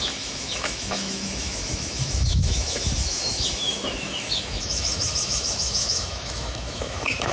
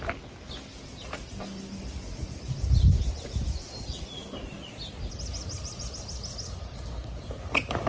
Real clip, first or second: second